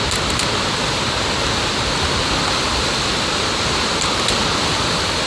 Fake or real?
real